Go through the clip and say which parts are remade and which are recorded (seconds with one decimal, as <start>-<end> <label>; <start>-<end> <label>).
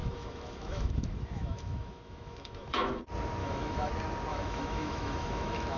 0.0-3.0 remade; 3.0-3.4 recorded; 3.4-3.9 remade; 3.9-4.3 recorded; 4.3-5.8 remade